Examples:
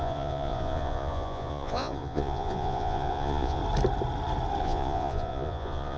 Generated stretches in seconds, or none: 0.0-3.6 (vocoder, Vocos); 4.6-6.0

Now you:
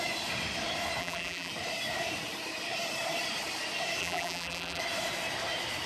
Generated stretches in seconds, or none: 1.0-1.5 (vocoder, BigVGAN v2); 4.0-4.8

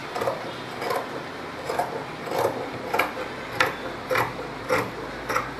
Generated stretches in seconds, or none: 0.0-3.4 (vocoder, BigVGAN v2)

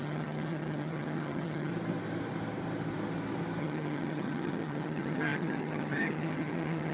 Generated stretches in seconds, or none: 0.0-1.7 (vocoder, HiFi-GAN); 3.6-6.9